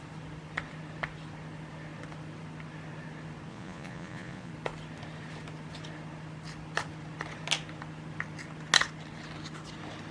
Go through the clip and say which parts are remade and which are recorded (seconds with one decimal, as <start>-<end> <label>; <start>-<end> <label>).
0.0-3.5 recorded; 3.5-4.5 remade; 4.5-10.1 recorded